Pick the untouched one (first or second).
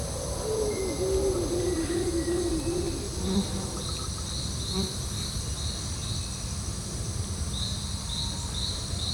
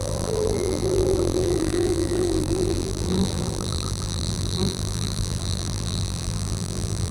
first